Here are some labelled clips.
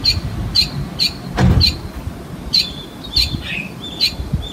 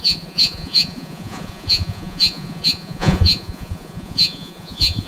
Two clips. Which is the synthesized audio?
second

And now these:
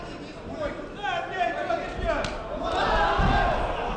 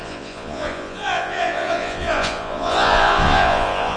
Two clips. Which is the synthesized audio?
second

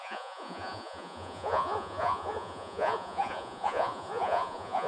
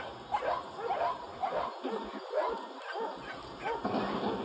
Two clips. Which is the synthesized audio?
first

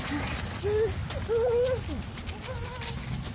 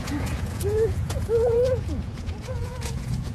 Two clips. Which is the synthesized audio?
second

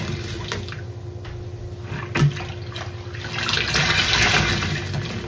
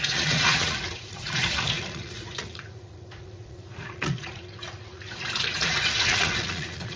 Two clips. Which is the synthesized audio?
second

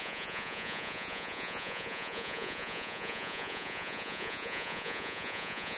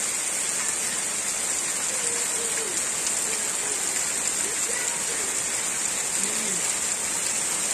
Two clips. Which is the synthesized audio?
first